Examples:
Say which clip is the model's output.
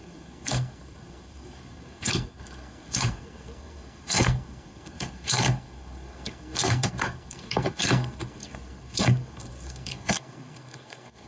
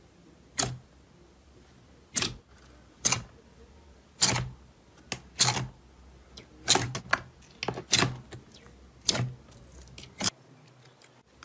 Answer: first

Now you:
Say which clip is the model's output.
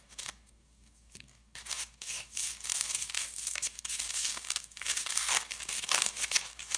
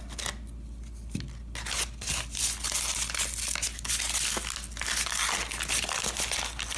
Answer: first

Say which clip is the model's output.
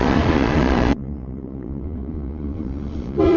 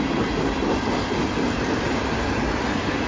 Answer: first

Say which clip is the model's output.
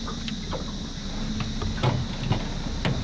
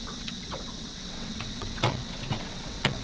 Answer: second